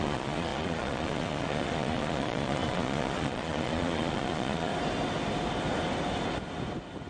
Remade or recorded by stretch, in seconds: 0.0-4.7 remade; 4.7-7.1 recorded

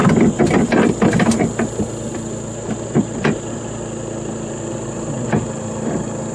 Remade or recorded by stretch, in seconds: 0.0-6.3 recorded

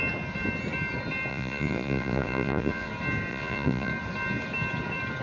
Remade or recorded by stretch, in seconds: 0.0-1.3 recorded; 1.3-2.9 remade; 2.9-3.3 recorded; 3.3-3.9 remade; 3.9-5.2 recorded

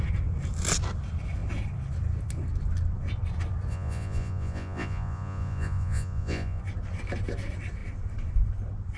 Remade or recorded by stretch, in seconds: 0.0-3.7 recorded; 3.7-6.6 remade; 6.6-9.0 recorded

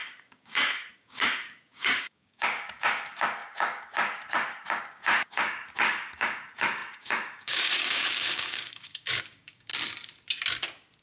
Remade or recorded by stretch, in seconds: 0.0-9.7 remade; 9.7-11.0 recorded

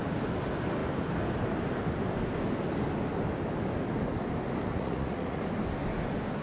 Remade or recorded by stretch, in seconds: 0.0-4.7 recorded; 4.7-5.4 remade; 5.4-6.4 recorded

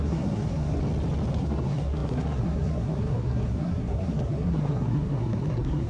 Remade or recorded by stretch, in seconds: 0.0-0.8 remade; 0.8-1.3 recorded; 1.3-5.9 remade

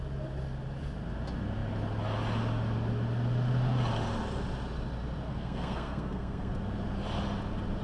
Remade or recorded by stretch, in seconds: 0.0-5.3 recorded; 5.3-6.5 remade; 6.5-7.8 recorded